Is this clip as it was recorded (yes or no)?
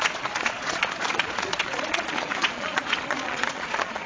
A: no